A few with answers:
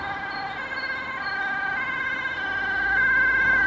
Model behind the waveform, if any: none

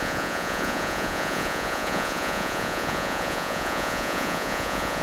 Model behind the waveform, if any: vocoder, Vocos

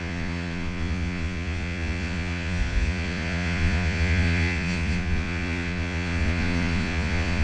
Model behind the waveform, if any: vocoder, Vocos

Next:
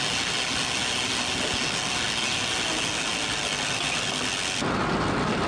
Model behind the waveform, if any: none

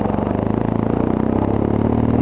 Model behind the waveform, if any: none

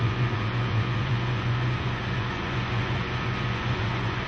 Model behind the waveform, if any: vocoder, Vocos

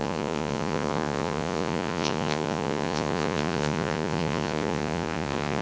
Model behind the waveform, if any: vocoder, Vocos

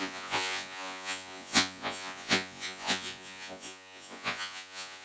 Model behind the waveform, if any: vocoder, Vocos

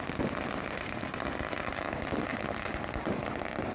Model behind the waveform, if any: none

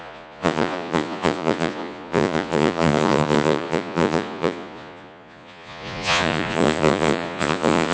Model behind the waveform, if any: vocoder, Vocos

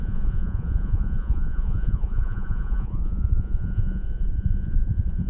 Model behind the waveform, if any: vocoder, Vocos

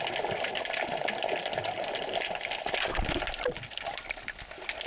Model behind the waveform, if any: none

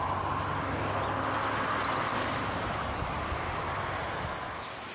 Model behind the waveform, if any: none